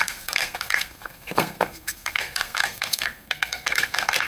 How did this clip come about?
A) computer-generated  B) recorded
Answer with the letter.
A